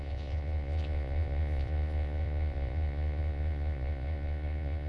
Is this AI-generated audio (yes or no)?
yes